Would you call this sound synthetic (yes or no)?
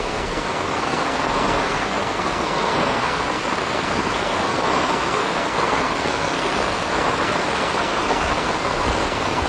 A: yes